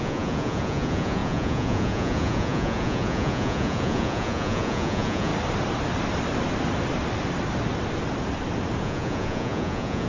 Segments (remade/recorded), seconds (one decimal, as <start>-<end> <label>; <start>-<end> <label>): 0.0-5.3 remade; 5.3-8.8 recorded; 8.8-10.1 remade